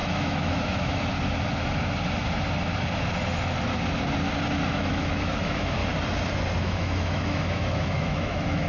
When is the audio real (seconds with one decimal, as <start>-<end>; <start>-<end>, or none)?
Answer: 1.0-4.7; 5.8-6.6